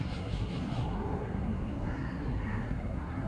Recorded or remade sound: remade